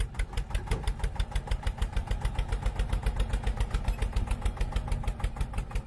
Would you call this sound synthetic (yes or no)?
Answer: no